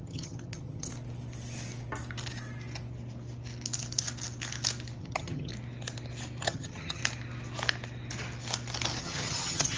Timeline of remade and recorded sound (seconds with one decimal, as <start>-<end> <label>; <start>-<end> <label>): 0.0-0.9 remade; 0.9-5.0 recorded; 5.0-5.5 remade; 5.5-6.4 recorded; 6.4-7.0 remade; 7.0-9.0 recorded; 9.0-9.8 remade